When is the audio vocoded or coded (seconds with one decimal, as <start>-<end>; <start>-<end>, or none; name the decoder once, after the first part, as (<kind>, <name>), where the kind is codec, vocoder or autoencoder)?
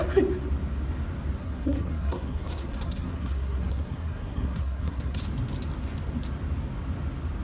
1.4-5.2 (codec, SNAC)